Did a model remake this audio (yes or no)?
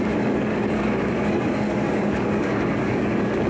yes